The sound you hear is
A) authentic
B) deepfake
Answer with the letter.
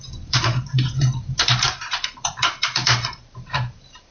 B